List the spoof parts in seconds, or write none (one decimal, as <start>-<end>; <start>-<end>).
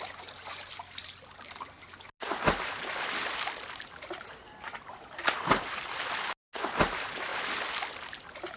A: none